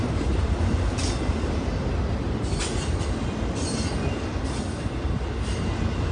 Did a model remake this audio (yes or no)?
no